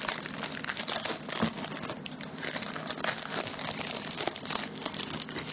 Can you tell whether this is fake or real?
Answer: real